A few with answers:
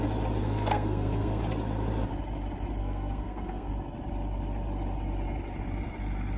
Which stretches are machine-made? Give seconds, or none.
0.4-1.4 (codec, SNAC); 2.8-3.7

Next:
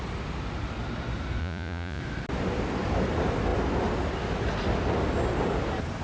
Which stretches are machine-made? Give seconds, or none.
1.4-2.0 (vocoder, Vocos)

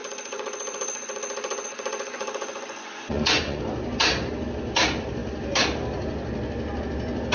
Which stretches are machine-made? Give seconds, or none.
0.0-3.6 (vocoder, Vocos)

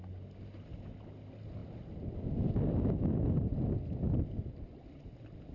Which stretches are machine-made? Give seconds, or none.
none

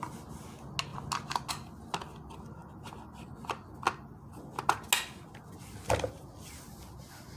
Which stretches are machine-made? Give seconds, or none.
none

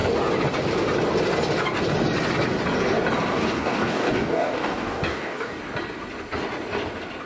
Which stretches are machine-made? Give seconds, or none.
3.3-5.6 (codec, DAC)